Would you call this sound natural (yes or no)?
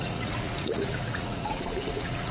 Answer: no